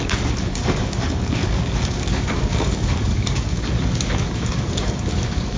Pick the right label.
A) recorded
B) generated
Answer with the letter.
B